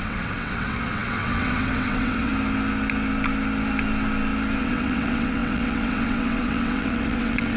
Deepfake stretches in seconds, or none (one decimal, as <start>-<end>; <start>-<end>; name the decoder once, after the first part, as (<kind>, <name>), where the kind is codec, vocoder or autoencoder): 0.0-2.3 (vocoder, WaveNeXt); 4.6-7.6